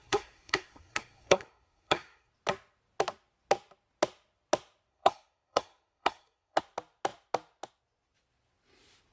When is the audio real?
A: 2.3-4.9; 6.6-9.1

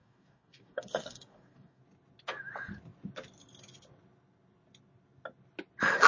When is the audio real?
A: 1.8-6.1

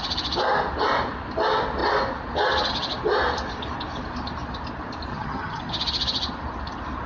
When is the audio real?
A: 0.0-5.1; 5.6-7.1